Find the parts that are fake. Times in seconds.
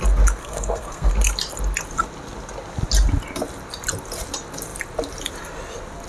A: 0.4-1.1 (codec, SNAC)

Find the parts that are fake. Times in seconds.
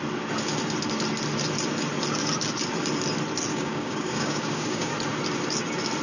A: 3.5-4.9 (codec, DAC)